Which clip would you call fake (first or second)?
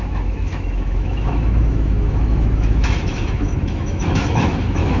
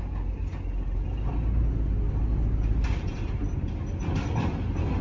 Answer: first